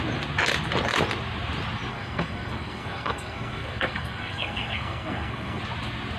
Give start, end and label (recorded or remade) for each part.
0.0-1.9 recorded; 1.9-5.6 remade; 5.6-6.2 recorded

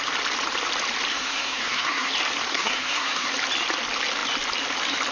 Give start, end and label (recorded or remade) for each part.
0.0-1.1 recorded; 1.1-2.1 remade; 2.1-2.5 recorded; 2.5-3.3 remade; 3.3-5.1 recorded

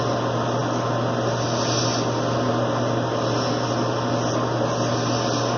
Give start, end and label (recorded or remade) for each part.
0.0-5.6 recorded

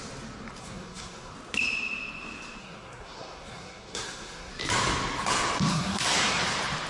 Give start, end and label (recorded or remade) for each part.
0.0-0.6 recorded; 0.6-1.3 remade; 1.3-2.6 recorded; 2.6-4.5 remade; 4.5-5.7 recorded; 5.7-6.4 remade; 6.4-6.9 recorded

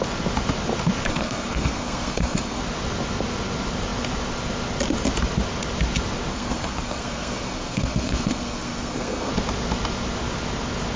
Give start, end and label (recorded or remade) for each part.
0.0-1.1 recorded; 1.1-2.6 remade; 2.6-6.3 recorded; 6.3-9.3 remade; 9.3-11.0 recorded

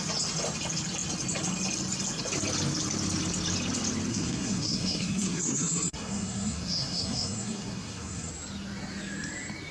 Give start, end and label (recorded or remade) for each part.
0.0-4.1 recorded; 4.1-8.3 remade; 8.3-9.7 recorded

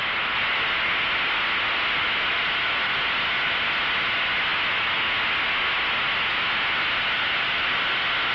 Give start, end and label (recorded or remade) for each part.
0.0-8.3 recorded

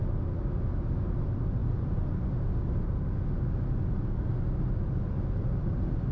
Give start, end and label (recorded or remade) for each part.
0.0-6.1 recorded